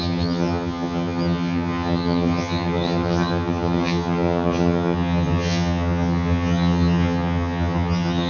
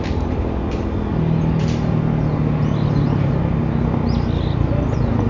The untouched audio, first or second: second